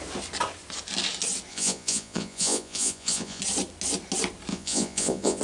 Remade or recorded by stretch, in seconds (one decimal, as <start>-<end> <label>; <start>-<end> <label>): 0.0-1.5 recorded; 1.5-3.4 remade; 3.4-4.5 recorded; 4.5-5.4 remade